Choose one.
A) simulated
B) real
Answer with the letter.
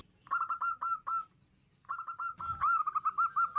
B